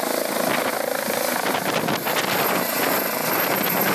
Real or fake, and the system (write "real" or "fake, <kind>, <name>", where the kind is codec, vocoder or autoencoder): real